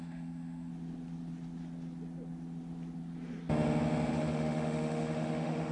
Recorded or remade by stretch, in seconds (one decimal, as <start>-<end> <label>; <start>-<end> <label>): 0.0-0.7 remade; 0.7-4.1 recorded; 4.1-5.7 remade